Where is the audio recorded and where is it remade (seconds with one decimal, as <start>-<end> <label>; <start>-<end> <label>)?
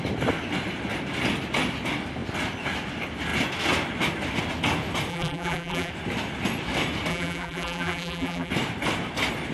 0.0-5.1 recorded; 5.1-5.9 remade; 5.9-7.1 recorded; 7.1-8.5 remade; 8.5-9.5 recorded